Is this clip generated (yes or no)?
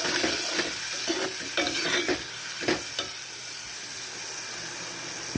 no